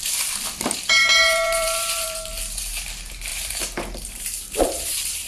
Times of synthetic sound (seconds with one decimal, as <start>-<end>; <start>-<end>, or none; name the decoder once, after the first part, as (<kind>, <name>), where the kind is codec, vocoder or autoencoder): 1.0-2.9 (vocoder, BigVGAN v2); 3.3-5.3